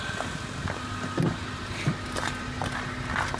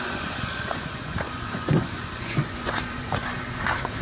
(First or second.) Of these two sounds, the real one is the first